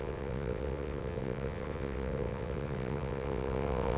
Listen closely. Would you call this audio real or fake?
fake